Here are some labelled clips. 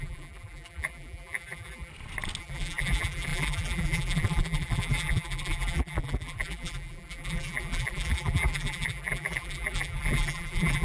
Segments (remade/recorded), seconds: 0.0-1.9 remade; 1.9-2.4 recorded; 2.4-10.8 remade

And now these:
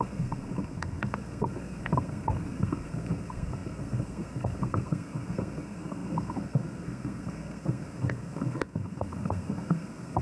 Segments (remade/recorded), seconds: 0.0-10.2 remade

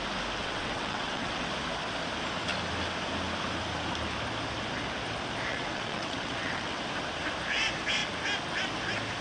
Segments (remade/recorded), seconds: 0.0-0.4 recorded; 0.4-1.5 remade; 1.5-5.5 recorded; 5.5-6.8 remade; 6.8-9.2 recorded